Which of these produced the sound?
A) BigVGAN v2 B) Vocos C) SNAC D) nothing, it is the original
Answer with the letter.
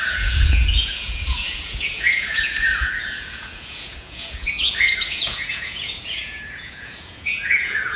B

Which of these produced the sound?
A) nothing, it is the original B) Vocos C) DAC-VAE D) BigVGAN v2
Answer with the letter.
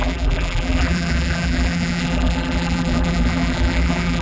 D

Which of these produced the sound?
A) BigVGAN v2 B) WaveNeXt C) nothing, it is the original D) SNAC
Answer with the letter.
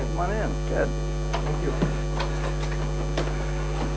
C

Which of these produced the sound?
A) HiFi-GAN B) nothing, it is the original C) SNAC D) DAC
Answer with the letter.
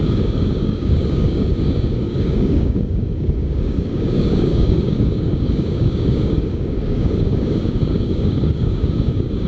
D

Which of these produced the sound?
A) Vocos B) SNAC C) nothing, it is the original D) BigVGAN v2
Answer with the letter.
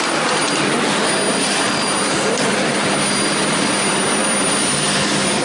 D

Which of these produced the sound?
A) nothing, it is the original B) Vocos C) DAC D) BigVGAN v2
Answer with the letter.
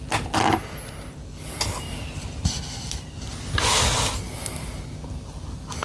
A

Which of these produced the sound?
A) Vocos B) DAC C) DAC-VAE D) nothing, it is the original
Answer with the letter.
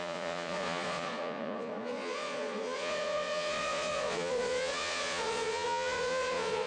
A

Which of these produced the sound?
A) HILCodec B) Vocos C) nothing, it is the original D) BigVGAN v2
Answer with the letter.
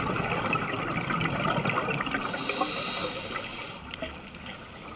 C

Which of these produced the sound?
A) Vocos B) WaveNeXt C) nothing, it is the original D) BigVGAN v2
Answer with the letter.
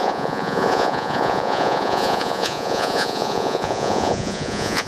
A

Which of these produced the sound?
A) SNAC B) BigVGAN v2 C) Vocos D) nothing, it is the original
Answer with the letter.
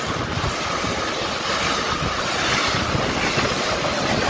D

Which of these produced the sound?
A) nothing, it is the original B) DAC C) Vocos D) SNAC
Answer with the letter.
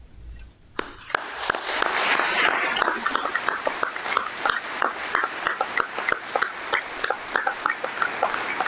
A